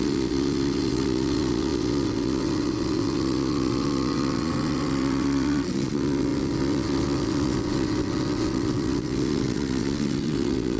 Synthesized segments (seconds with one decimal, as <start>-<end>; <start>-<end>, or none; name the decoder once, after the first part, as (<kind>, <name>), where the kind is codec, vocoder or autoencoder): 0.0-10.8 (vocoder, WaveNeXt)